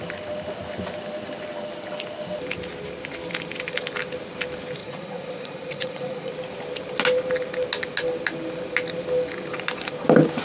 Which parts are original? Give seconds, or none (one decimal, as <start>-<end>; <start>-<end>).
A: 0.0-4.8; 6.3-10.4